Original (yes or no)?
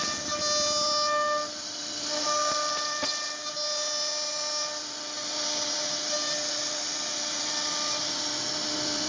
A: yes